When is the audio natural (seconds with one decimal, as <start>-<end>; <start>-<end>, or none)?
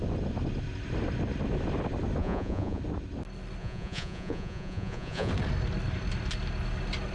0.0-2.2; 2.8-3.6; 5.3-7.1